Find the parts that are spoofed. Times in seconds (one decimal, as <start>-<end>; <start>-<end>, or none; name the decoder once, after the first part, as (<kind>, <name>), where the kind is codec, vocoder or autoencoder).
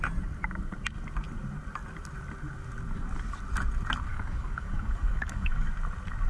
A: 4.1-5.7 (codec, DAC)